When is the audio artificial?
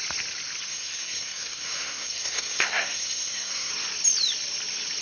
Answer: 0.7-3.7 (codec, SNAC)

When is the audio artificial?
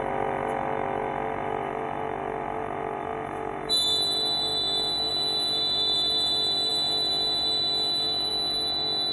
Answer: 0.0-9.1 (autoencoder, DAC-VAE)